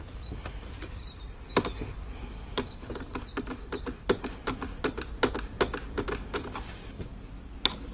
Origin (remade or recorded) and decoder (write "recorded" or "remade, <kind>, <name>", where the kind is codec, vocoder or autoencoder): recorded